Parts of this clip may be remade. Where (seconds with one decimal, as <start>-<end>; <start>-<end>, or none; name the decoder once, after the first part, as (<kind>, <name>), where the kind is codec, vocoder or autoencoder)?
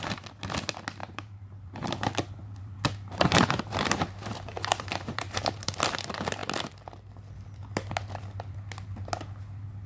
1.0-5.8 (vocoder, BigVGAN v2)